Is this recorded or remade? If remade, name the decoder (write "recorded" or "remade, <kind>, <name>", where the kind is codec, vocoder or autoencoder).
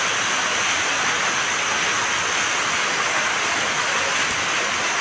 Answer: recorded